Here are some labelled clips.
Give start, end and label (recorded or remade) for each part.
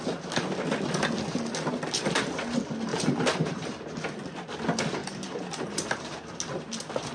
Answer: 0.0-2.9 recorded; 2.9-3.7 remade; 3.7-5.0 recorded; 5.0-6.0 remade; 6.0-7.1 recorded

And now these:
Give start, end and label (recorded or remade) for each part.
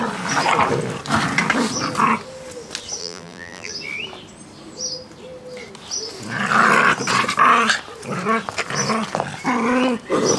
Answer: 0.0-3.0 recorded; 3.0-3.7 remade; 3.7-10.4 recorded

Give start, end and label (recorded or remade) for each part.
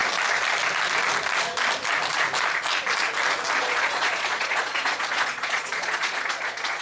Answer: 0.0-3.6 recorded; 3.6-6.8 remade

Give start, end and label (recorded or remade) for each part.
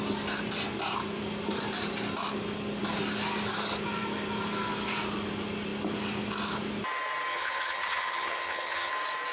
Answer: 0.0-7.3 recorded; 7.3-8.9 remade; 8.9-9.3 recorded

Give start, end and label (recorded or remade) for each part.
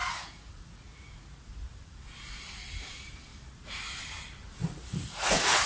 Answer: 0.0-1.4 remade; 1.4-4.6 recorded; 4.6-5.7 remade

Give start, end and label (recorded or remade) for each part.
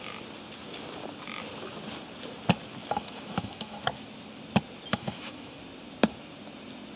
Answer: 0.0-2.8 recorded; 2.8-3.8 remade; 3.8-4.9 recorded; 4.9-5.6 remade; 5.6-7.0 recorded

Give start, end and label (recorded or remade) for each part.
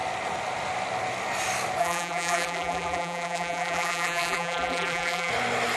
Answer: 0.0-1.8 recorded; 1.8-5.3 remade; 5.3-5.8 recorded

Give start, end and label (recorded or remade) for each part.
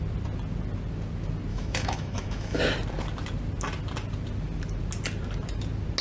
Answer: 0.0-1.5 recorded; 1.5-2.6 remade; 2.6-6.0 recorded